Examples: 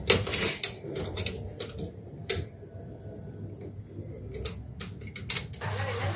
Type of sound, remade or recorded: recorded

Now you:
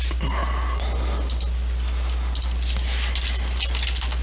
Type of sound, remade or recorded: recorded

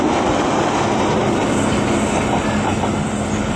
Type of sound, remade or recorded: recorded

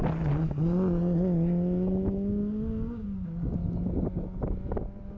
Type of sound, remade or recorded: recorded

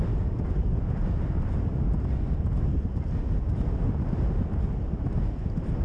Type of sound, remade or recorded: recorded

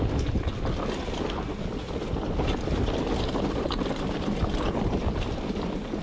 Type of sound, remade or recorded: recorded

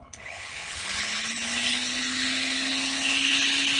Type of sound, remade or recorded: remade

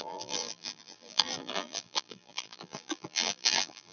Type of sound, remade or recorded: remade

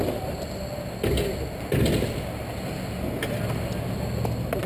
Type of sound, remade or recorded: recorded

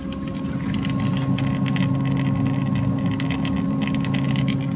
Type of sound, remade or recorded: recorded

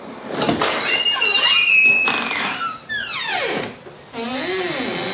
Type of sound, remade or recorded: recorded